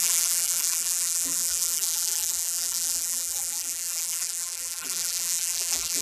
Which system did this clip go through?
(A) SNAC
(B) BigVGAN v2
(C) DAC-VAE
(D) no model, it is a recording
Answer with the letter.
B